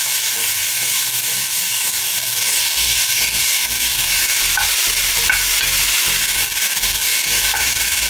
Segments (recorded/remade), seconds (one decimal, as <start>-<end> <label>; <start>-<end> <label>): 0.0-4.4 remade; 4.4-6.2 recorded; 6.2-8.1 remade